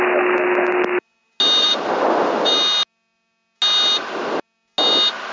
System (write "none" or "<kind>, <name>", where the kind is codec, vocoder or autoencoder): none